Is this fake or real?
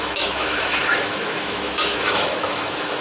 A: fake